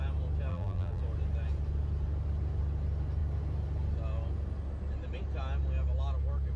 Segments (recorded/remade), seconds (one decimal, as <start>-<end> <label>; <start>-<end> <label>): 0.0-0.5 recorded; 0.5-1.0 remade; 1.0-6.6 recorded